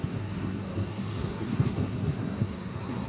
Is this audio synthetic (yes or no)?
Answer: yes